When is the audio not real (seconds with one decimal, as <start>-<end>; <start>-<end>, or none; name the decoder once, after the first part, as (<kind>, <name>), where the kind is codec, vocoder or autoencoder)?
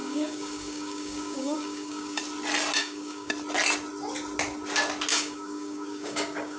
0.0-2.2 (codec, DAC); 2.8-3.3; 5.1-6.6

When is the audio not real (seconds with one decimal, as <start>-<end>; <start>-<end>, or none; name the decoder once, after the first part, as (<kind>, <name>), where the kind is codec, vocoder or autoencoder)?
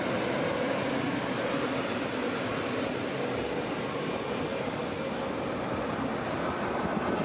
none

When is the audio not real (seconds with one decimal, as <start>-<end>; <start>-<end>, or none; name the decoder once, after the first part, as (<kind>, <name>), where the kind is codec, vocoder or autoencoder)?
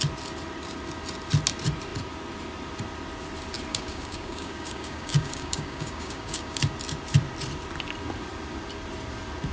3.7-6.6 (codec, DAC)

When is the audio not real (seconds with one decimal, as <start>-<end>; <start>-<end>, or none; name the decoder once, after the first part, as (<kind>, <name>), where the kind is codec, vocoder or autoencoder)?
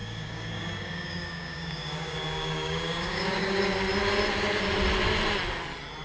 0.0-3.6 (codec, DAC)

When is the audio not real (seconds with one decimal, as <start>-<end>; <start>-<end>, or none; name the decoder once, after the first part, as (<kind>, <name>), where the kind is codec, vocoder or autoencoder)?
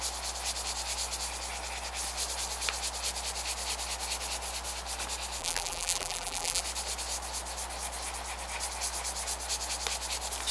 5.4-6.6 (vocoder, BigVGAN v2)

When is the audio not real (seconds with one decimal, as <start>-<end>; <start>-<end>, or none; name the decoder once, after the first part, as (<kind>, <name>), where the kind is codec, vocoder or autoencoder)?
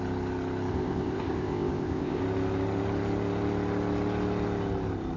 0.7-2.2 (codec, ZipCodec)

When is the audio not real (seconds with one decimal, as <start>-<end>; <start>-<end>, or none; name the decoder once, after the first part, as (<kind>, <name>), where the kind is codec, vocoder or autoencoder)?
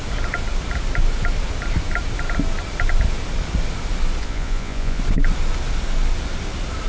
4.2-5.0 (vocoder, Vocos)